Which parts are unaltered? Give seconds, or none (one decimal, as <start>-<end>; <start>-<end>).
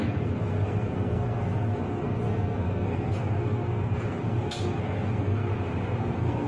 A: 5.5-6.1